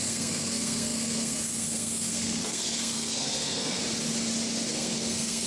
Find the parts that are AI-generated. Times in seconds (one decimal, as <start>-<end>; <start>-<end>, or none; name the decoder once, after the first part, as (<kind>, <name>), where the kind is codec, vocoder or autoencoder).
0.0-3.8 (codec, SNAC); 4.7-5.5